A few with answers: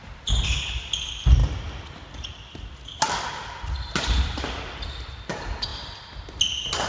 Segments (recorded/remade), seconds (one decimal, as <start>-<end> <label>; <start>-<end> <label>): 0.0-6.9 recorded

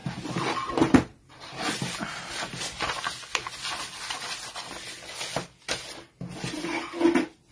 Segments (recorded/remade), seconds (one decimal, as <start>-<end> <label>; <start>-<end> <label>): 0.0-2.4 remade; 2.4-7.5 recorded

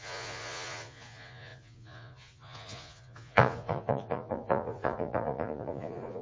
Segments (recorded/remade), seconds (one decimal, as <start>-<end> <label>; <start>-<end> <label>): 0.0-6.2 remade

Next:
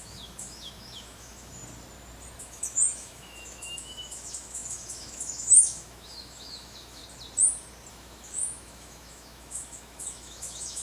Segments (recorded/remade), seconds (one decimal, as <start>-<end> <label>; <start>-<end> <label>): 0.0-1.6 remade; 1.6-2.4 recorded; 2.4-7.0 remade; 7.0-7.9 recorded; 7.9-10.8 remade

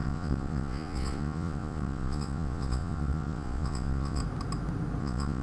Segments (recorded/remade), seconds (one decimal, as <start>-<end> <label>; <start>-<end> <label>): 0.0-4.2 remade; 4.2-5.0 recorded; 5.0-5.4 remade

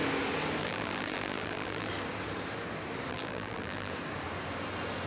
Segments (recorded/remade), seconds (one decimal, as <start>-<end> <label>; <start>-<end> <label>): 0.0-0.6 recorded; 0.6-1.9 remade; 1.9-3.1 recorded; 3.1-3.9 remade; 3.9-5.1 recorded

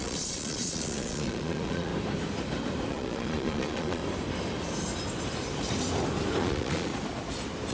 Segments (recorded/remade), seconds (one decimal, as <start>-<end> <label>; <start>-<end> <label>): 0.0-1.9 remade; 1.9-2.9 recorded; 2.9-4.0 remade; 4.0-6.4 recorded; 6.4-6.9 remade; 6.9-7.7 recorded

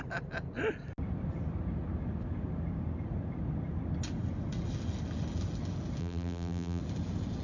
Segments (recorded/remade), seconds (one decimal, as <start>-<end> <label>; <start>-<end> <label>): 0.0-6.0 recorded; 6.0-6.8 remade; 6.8-7.4 recorded